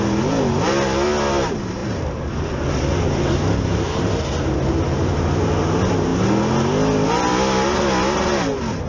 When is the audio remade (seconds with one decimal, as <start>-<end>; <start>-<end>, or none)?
none